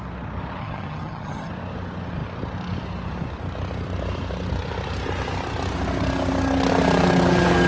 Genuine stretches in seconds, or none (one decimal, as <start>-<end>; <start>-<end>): 0.0-0.6; 1.5-7.7